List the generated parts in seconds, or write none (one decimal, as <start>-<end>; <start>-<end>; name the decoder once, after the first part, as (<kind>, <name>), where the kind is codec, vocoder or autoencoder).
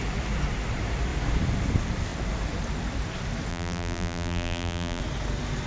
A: 3.5-5.0 (vocoder, BigVGAN v2)